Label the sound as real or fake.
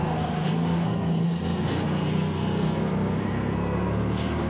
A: fake